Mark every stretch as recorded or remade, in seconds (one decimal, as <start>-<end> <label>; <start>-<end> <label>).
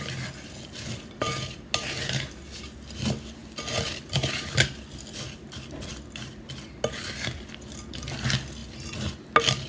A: 0.0-9.7 recorded